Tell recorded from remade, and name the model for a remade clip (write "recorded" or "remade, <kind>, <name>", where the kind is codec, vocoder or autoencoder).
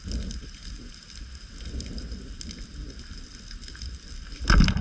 recorded